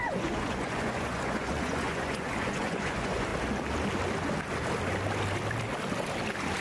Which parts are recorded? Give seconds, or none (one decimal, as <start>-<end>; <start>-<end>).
3.3-6.6